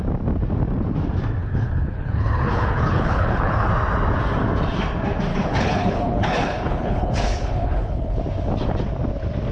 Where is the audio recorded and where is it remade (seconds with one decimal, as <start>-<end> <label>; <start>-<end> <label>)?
0.0-1.4 recorded; 1.4-3.7 remade; 3.7-5.3 recorded; 5.3-8.2 remade; 8.2-9.5 recorded